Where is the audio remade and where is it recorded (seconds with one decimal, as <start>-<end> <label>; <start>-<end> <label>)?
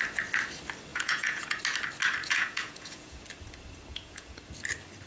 0.0-0.9 recorded; 0.9-1.6 remade; 1.6-2.2 recorded; 2.2-3.2 remade; 3.2-3.9 recorded; 3.9-4.4 remade; 4.4-5.1 recorded